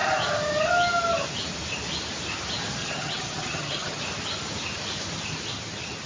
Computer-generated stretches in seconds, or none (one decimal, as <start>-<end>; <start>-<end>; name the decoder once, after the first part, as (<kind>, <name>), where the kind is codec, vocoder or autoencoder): 2.8-4.0 (vocoder, HiFi-GAN)